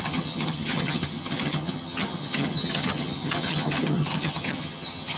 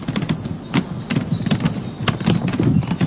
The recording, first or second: second